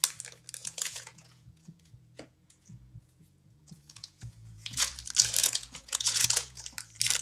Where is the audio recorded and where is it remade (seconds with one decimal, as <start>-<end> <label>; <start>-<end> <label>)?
0.0-0.6 recorded; 0.6-4.9 remade; 4.9-5.4 recorded; 5.4-6.6 remade; 6.6-7.2 recorded